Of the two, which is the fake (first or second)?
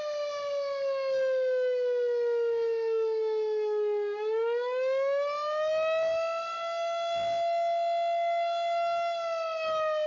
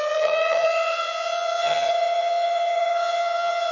second